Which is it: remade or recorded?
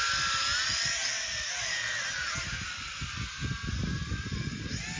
recorded